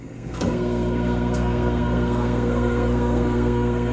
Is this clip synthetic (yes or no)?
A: yes